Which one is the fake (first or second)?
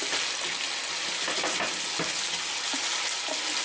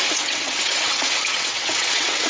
second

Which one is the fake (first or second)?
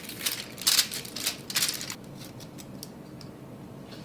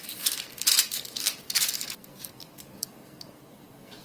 second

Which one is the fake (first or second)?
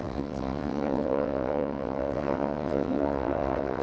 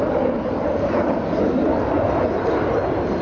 first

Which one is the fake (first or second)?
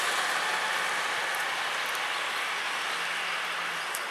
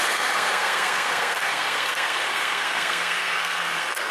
second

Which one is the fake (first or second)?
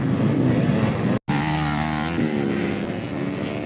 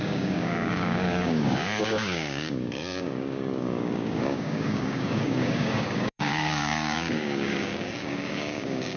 second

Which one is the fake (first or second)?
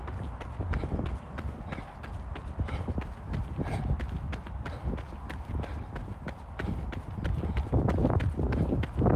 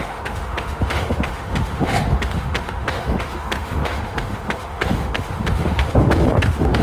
second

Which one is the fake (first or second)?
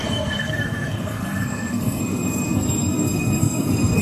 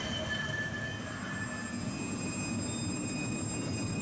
first